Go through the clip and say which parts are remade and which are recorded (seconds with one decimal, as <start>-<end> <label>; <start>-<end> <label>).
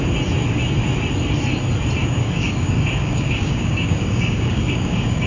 0.0-2.0 recorded; 2.0-5.3 remade